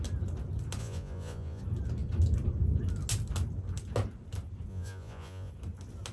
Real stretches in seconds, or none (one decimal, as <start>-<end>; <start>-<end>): 0.0-0.8; 1.6-4.7; 5.5-6.1